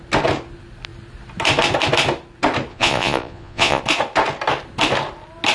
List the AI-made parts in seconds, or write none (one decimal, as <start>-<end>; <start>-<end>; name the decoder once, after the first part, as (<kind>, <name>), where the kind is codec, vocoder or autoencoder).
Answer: 2.7-3.8 (vocoder, Vocos)